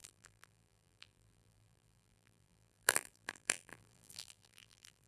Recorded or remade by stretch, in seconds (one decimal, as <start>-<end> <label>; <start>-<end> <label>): 0.0-5.1 remade